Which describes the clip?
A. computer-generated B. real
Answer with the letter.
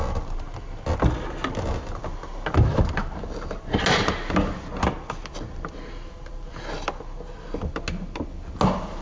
B